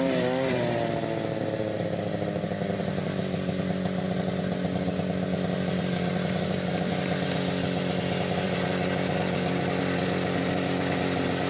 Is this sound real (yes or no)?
yes